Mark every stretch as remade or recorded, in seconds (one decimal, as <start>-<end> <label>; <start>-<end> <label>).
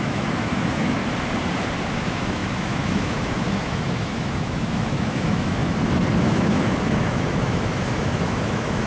0.0-1.0 remade; 1.0-1.9 recorded; 1.9-5.6 remade; 5.6-6.2 recorded; 6.2-8.9 remade